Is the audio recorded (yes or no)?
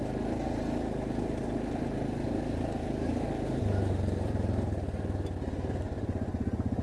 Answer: yes